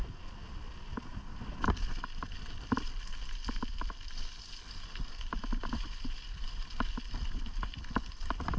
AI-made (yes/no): yes